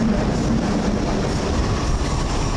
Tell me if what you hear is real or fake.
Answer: real